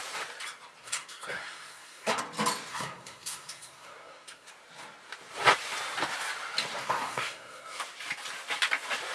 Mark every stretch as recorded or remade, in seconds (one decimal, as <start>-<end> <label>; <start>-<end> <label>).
0.0-0.8 recorded; 0.8-2.2 remade; 2.2-2.7 recorded; 2.7-4.5 remade; 4.5-6.8 recorded; 6.8-7.8 remade; 7.8-9.1 recorded